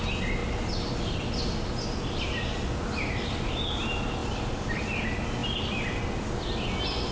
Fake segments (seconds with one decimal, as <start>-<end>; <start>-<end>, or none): none